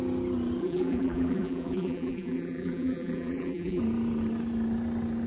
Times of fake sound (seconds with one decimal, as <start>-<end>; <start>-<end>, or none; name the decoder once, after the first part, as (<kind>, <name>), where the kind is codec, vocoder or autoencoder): 0.6-3.8 (vocoder, BigVGAN v2)